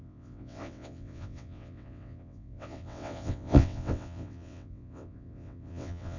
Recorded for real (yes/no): no